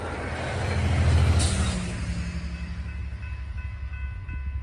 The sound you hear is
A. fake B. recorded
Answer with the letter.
B